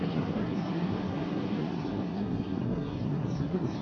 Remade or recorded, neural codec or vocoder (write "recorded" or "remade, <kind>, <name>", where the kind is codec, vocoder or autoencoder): remade, codec, SNAC